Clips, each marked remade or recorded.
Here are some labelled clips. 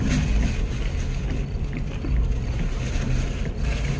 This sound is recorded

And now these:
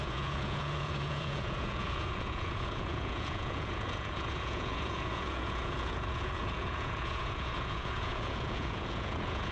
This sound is remade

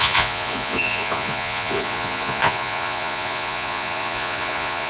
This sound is remade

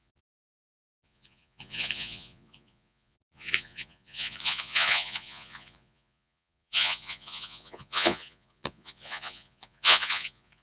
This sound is remade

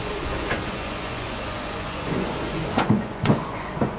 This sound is remade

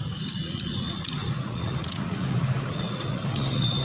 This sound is remade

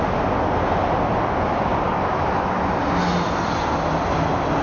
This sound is recorded